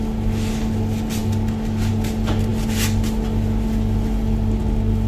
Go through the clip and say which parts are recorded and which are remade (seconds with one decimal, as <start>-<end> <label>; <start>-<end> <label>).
0.0-5.1 recorded

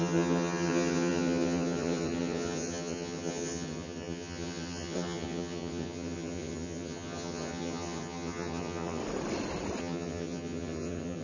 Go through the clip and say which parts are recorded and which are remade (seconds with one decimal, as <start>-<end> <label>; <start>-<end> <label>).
0.0-9.0 remade; 9.0-9.8 recorded; 9.8-11.2 remade

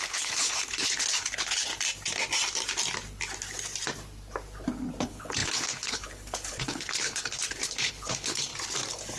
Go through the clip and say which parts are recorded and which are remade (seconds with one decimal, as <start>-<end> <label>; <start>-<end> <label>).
0.0-1.7 remade; 1.7-5.0 recorded; 5.0-8.5 remade; 8.5-9.2 recorded

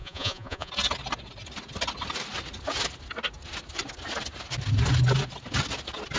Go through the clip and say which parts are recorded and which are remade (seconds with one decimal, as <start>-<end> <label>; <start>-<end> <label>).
0.0-0.7 remade; 0.7-6.2 recorded

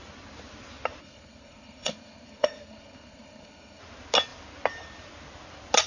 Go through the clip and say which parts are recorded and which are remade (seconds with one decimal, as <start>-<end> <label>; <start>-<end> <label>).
0.0-1.0 recorded; 1.0-3.8 remade; 3.8-5.9 recorded

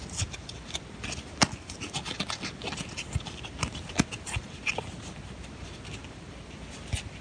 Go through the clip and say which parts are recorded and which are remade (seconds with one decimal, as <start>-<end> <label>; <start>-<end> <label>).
0.0-7.2 recorded

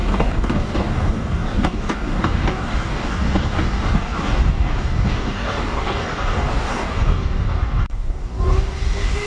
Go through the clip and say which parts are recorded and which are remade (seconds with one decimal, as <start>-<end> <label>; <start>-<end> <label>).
0.0-9.3 remade